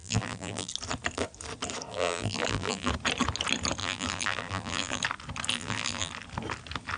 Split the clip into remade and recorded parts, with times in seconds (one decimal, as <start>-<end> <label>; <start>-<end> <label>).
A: 0.0-0.7 remade; 0.7-1.9 recorded; 1.9-2.9 remade; 2.9-3.8 recorded; 3.8-5.0 remade; 5.0-5.5 recorded; 5.5-6.1 remade; 6.1-7.0 recorded